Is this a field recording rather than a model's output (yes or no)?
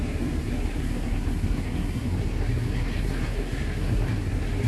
no